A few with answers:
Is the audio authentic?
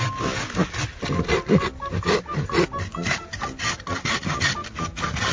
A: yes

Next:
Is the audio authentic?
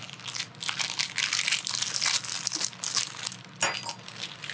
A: yes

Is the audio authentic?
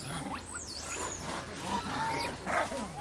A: yes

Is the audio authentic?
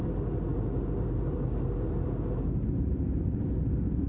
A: yes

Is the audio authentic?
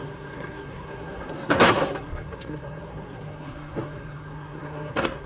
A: no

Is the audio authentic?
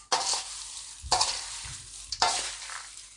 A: yes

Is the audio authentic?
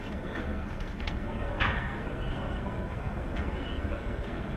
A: no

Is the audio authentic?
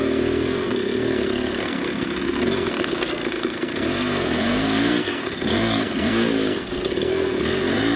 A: no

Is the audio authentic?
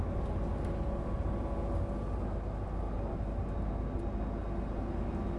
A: yes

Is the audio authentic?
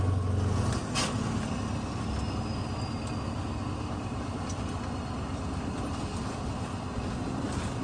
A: yes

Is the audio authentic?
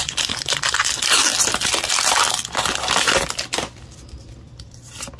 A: yes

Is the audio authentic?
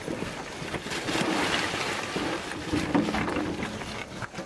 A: yes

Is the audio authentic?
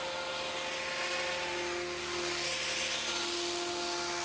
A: yes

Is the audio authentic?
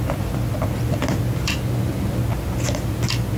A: yes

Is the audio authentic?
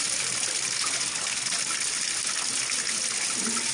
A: yes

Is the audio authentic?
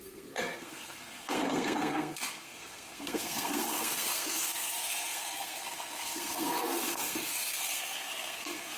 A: no